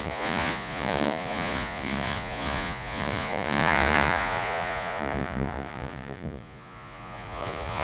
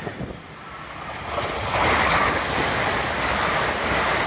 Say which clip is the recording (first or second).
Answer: second